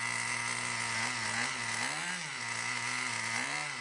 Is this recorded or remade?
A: recorded